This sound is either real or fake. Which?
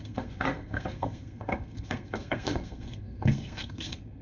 fake